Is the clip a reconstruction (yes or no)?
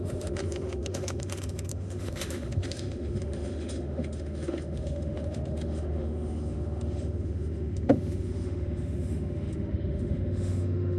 yes